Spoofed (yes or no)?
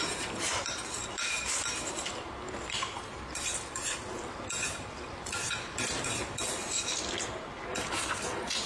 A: no